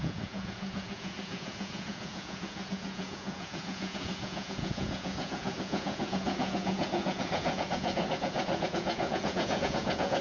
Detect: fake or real fake